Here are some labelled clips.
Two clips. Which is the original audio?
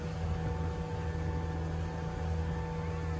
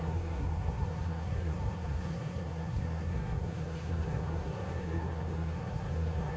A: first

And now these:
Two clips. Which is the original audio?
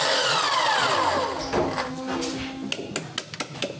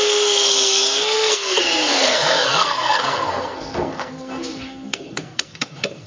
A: first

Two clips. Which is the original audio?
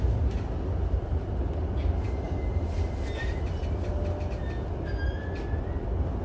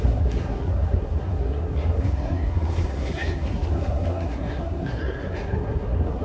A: first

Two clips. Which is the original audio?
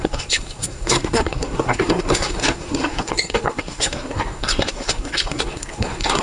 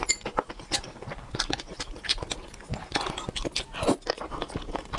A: second